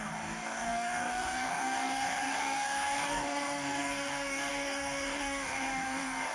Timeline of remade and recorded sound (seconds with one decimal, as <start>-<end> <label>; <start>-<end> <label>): 0.0-6.3 remade